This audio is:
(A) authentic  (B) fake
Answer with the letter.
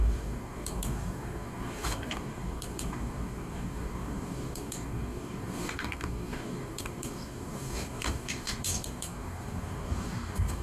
B